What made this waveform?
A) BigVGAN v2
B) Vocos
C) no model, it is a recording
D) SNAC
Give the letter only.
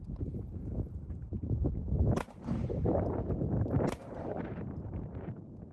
A